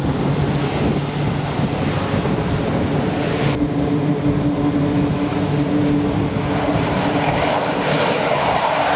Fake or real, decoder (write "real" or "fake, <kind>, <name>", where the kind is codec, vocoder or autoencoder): real